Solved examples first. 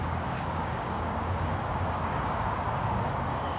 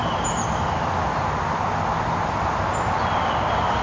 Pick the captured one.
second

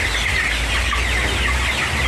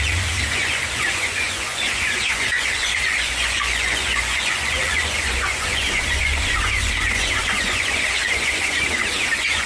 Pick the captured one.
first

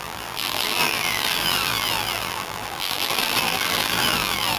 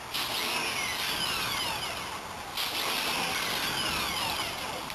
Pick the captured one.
second